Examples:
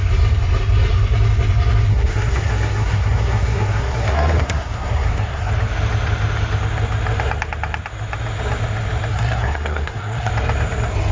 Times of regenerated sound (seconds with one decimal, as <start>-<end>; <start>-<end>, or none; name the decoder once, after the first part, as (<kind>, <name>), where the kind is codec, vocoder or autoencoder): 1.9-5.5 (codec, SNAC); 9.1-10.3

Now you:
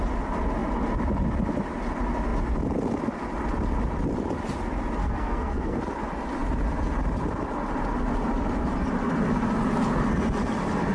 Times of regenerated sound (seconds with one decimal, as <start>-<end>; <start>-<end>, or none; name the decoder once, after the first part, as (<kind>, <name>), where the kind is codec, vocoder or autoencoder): 5.0-5.8 (codec, SNAC)

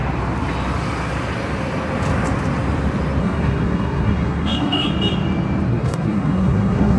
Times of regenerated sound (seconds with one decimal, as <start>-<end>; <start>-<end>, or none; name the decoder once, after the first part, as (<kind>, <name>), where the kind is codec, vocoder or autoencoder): 3.2-4.9 (codec, SNAC); 5.7-7.0

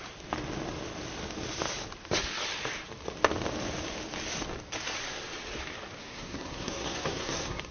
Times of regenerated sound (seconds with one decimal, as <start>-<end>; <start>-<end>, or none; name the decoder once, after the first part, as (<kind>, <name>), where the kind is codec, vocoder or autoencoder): 6.0-7.7 (codec, SNAC)

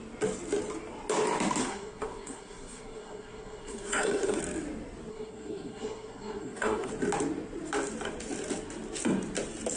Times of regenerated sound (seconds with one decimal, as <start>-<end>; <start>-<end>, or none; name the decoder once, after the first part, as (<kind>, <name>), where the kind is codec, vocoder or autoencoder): 1.6-4.4 (codec, SNAC); 5.1-6.9